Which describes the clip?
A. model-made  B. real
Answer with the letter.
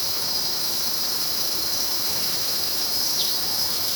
A